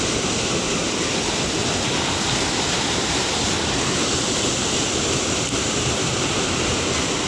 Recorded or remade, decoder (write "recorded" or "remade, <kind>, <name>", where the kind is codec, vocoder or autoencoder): remade, vocoder, BigVGAN v2